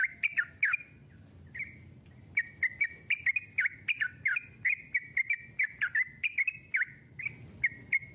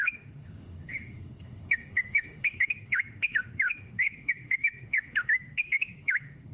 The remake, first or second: second